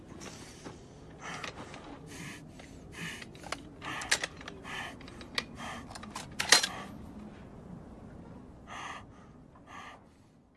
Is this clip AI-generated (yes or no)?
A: no